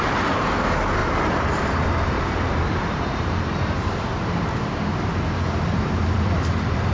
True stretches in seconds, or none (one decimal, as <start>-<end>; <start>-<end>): none